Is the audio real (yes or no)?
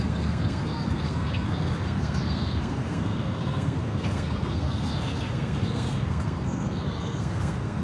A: no